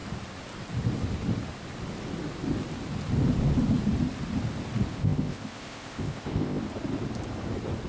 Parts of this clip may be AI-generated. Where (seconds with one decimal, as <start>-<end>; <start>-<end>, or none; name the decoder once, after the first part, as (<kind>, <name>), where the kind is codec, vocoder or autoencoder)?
4.9-6.6 (codec, ZipCodec)